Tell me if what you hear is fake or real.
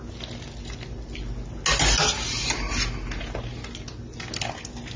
real